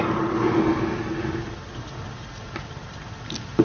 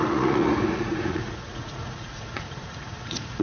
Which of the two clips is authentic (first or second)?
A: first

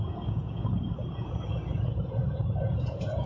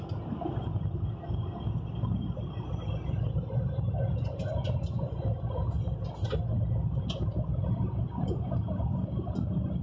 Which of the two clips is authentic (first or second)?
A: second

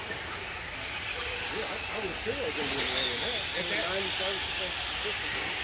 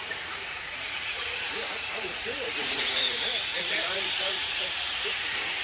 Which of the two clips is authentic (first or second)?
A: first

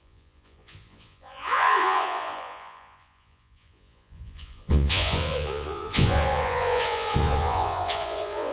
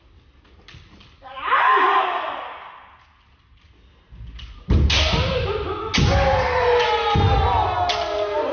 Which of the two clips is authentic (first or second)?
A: second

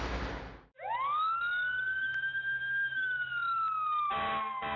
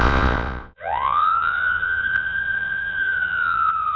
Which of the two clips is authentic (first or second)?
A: first